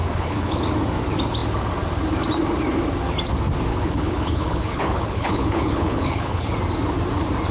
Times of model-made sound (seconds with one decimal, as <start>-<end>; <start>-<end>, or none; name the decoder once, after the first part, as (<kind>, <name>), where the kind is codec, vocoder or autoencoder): 0.0-0.6 (codec, HILCodec); 3.7-6.5